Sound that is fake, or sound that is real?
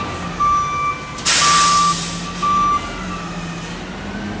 real